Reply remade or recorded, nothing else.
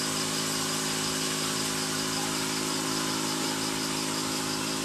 recorded